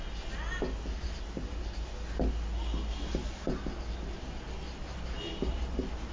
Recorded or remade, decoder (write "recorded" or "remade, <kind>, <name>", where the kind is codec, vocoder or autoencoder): recorded